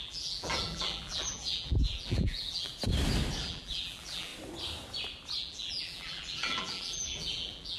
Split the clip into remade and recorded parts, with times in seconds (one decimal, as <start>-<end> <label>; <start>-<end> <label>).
0.0-2.7 remade; 2.7-3.4 recorded; 3.4-4.3 remade; 4.3-5.4 recorded; 5.4-7.8 remade